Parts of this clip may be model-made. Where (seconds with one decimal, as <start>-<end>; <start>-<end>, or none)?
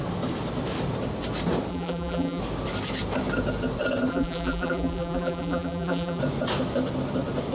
1.7-2.4; 4.1-6.2